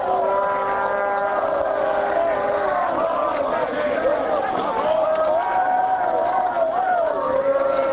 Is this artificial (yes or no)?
no